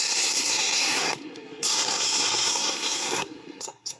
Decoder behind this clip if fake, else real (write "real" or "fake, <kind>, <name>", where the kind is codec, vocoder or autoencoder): fake, codec, SNAC